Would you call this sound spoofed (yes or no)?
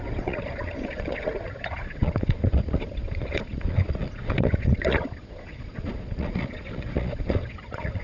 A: yes